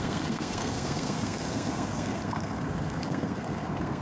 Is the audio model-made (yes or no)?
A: yes